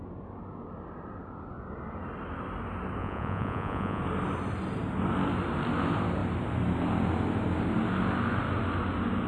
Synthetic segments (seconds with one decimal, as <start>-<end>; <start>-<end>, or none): 3.0-4.0